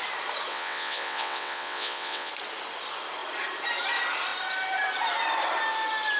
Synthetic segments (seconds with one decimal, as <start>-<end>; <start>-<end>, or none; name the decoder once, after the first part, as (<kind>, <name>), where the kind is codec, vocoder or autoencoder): 0.5-2.3 (vocoder, WaveNeXt)